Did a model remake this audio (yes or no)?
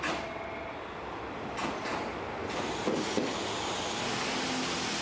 no